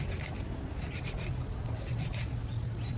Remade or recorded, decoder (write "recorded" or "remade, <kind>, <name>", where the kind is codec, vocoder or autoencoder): recorded